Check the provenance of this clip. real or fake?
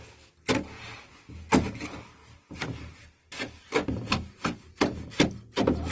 real